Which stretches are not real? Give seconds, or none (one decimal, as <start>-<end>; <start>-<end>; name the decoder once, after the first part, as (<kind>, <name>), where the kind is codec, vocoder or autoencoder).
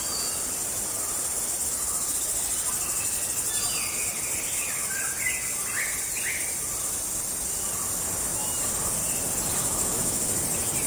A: 9.6-10.2 (autoencoder, DAC-VAE)